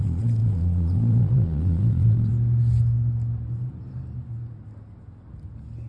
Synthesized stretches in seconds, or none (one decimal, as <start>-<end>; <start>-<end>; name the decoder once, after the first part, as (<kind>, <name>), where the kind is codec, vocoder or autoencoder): 0.0-2.3 (vocoder, Vocos)

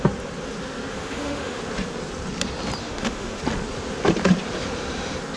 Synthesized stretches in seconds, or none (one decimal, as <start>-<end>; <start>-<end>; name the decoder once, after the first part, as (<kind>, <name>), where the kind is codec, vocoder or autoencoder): 0.9-1.6 (autoencoder, DAC-VAE); 2.8-3.4